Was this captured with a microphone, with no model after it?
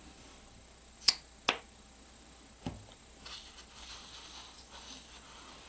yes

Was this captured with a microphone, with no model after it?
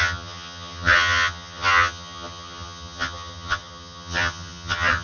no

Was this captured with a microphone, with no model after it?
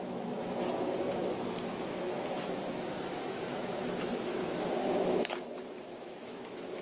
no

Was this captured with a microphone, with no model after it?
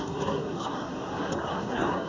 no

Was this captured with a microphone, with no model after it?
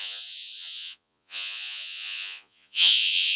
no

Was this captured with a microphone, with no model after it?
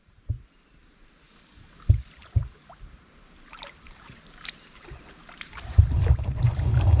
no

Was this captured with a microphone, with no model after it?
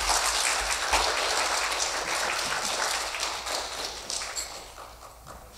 yes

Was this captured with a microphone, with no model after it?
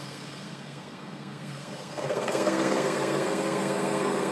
no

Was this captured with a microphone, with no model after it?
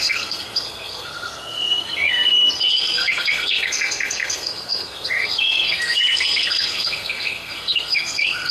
no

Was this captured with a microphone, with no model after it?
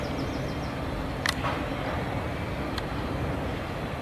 yes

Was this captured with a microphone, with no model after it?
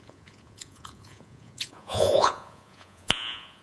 no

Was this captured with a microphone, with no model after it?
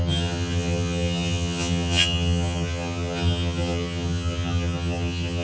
no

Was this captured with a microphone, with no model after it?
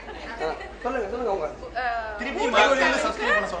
yes